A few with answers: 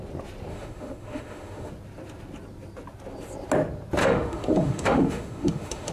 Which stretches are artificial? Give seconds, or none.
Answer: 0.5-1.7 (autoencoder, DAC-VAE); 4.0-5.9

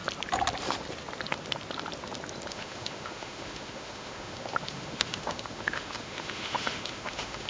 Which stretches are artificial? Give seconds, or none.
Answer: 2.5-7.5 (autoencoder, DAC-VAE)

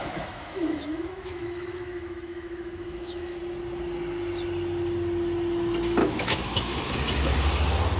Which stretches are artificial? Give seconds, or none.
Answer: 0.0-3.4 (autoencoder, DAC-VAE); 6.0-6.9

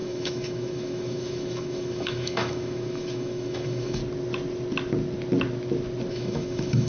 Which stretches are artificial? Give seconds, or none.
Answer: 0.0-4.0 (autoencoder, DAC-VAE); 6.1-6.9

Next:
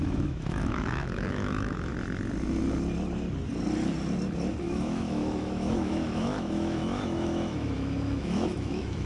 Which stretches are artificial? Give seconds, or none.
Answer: 0.0-1.9 (autoencoder, DAC-VAE); 4.6-9.1